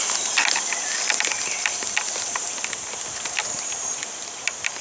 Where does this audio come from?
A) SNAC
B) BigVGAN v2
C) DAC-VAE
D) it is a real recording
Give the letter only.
D